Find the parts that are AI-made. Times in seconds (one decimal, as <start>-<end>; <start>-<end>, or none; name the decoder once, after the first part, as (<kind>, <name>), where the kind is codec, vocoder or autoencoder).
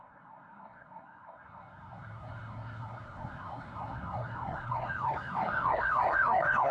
0.0-6.7 (codec, SNAC)